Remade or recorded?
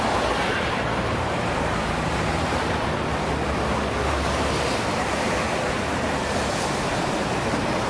remade